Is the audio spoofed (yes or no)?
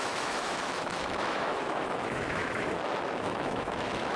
yes